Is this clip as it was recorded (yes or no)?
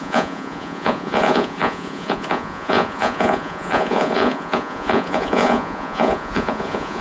no